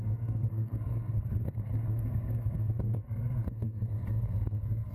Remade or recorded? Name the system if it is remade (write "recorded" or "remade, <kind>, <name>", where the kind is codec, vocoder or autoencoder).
remade, codec, SNAC